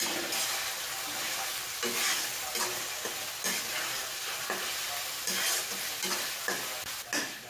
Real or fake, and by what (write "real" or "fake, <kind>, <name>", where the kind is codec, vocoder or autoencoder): real